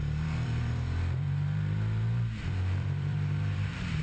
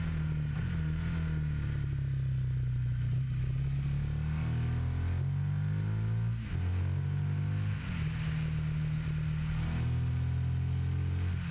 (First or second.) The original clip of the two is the second